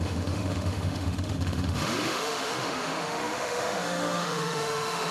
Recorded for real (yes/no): no